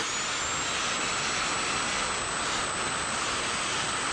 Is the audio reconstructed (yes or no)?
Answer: no